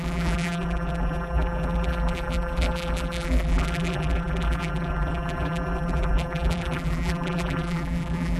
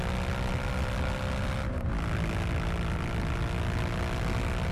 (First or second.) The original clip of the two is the second